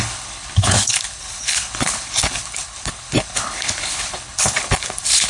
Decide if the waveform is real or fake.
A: fake